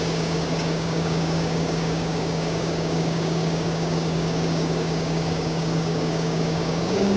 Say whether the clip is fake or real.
fake